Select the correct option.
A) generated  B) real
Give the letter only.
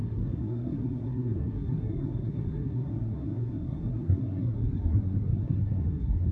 A